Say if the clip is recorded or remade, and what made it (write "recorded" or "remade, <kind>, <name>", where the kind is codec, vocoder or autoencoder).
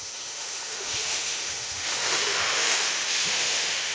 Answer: remade, autoencoder, DAC-VAE